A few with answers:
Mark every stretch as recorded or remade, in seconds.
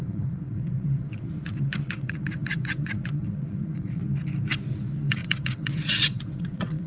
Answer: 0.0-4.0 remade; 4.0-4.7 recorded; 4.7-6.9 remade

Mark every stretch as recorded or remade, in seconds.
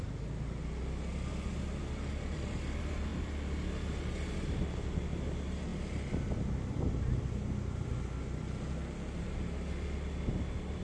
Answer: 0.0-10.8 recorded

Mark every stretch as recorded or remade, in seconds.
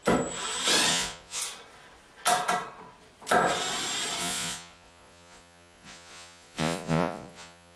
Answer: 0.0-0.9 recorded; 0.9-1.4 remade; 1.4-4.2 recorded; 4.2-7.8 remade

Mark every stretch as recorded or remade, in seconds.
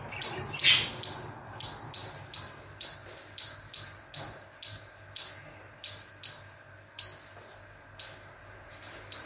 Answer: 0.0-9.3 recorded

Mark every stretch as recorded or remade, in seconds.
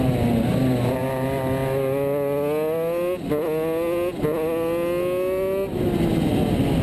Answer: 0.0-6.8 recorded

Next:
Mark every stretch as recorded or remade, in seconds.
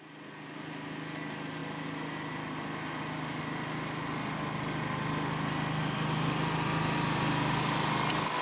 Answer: 0.0-8.4 recorded